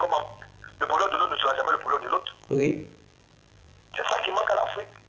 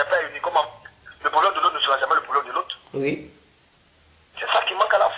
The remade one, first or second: first